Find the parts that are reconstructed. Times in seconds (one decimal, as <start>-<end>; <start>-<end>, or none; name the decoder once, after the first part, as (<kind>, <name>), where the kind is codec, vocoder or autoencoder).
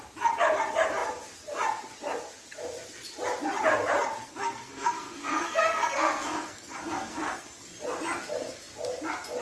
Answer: 4.2-7.6 (codec, SNAC)